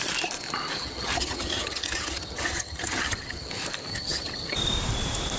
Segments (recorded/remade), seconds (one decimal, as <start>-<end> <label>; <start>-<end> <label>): 0.0-0.8 recorded; 0.8-3.5 remade; 3.5-3.9 recorded; 3.9-4.5 remade; 4.5-5.4 recorded